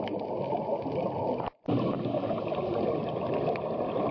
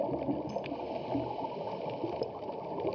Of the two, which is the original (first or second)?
second